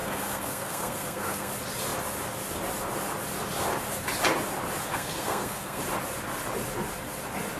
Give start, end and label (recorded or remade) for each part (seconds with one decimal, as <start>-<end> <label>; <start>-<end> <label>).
0.0-1.5 remade; 1.5-4.9 recorded; 4.9-5.8 remade; 5.8-7.6 recorded

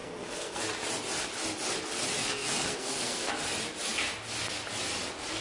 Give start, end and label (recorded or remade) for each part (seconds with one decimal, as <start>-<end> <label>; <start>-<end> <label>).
0.0-0.6 remade; 0.6-2.2 recorded; 2.2-3.3 remade; 3.3-5.4 recorded

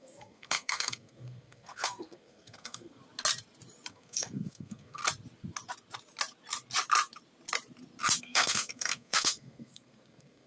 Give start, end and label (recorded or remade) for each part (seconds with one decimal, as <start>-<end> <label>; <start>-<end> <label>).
0.0-3.0 remade; 3.0-3.9 recorded; 3.9-5.0 remade; 5.0-8.2 recorded; 8.2-10.5 remade

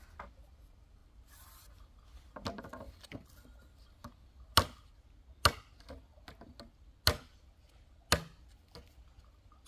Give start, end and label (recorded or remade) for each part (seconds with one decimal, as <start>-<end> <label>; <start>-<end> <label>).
0.0-9.7 recorded

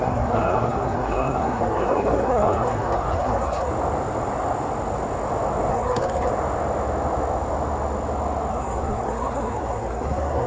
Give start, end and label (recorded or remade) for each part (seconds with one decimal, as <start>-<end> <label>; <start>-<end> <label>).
0.0-3.7 remade; 3.7-5.7 recorded; 5.7-6.3 remade; 6.3-8.5 recorded; 8.5-10.5 remade